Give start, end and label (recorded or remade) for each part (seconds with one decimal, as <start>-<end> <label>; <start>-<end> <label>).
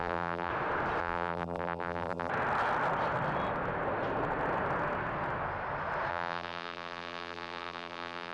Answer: 0.0-0.5 remade; 0.5-1.0 recorded; 1.0-2.3 remade; 2.3-6.1 recorded; 6.1-8.3 remade